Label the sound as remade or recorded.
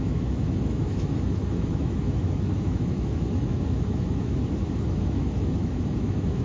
remade